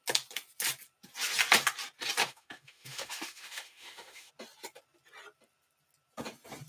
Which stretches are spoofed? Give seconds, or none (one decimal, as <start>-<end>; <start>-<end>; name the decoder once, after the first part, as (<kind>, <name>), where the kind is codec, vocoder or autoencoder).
2.2-4.3 (autoencoder, DAC-VAE)